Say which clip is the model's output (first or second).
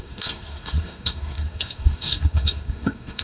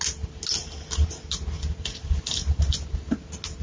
first